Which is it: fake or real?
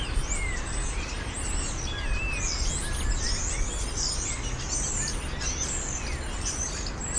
real